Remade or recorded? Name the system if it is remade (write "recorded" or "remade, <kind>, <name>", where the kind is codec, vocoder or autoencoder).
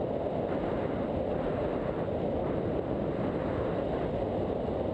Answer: recorded